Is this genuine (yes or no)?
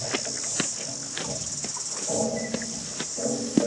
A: yes